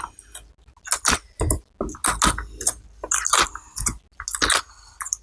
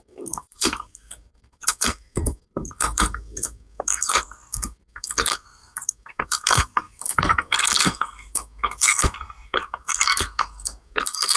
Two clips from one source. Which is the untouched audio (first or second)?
first